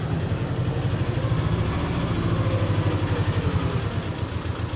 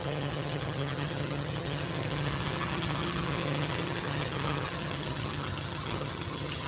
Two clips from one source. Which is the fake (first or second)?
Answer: second